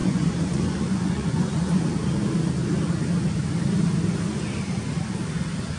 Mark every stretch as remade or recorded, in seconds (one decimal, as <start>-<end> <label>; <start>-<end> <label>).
0.0-1.8 remade; 1.8-5.8 recorded